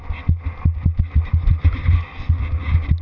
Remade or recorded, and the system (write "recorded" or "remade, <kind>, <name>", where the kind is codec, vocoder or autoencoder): recorded